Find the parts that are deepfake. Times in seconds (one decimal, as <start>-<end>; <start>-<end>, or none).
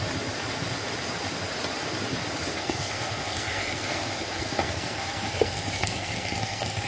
2.5-6.9